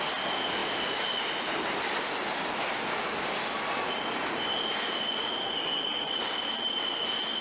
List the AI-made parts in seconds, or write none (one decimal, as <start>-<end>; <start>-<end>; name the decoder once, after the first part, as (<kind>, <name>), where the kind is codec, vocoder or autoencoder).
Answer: none